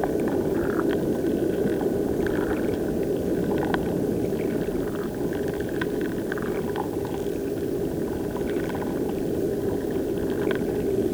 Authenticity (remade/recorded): recorded